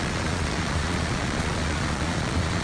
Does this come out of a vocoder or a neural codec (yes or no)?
yes